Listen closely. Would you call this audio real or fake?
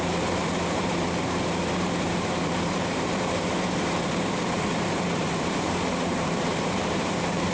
fake